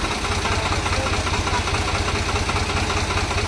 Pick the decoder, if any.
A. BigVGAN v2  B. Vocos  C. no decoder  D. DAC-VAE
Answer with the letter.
C